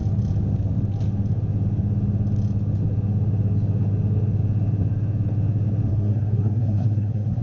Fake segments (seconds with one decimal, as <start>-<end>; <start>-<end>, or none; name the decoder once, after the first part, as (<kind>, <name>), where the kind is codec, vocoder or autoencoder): 5.9-7.4 (codec, SNAC)

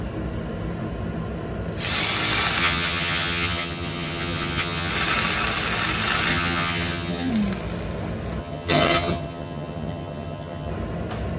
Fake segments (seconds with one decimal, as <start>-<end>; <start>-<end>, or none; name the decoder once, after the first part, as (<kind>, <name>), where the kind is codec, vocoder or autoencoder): 2.6-4.9 (vocoder, HiFi-GAN); 6.3-7.3; 8.4-10.7

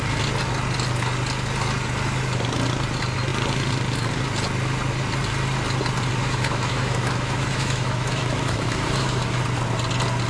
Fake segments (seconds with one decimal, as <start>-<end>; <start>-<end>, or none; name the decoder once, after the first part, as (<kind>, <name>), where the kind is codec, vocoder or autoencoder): 6.2-9.4 (autoencoder, DAC-VAE)

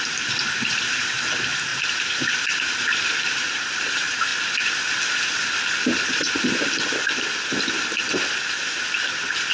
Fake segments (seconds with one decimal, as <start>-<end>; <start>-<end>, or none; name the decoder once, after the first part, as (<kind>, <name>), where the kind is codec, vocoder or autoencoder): 0.0-4.3 (vocoder, BigVGAN v2); 5.8-6.2

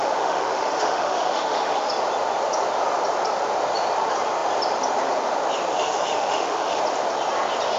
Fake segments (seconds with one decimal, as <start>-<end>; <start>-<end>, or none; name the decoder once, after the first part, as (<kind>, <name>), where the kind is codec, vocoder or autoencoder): 0.0-1.9 (autoencoder, DAC-VAE); 5.7-6.8

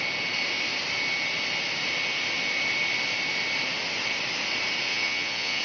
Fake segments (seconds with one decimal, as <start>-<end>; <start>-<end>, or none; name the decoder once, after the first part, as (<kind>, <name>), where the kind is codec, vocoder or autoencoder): 4.9-5.6 (vocoder, Vocos)